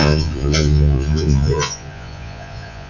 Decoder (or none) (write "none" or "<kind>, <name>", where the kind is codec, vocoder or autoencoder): vocoder, Vocos